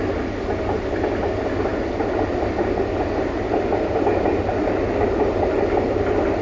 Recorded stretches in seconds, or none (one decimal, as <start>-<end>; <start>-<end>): 0.0-6.4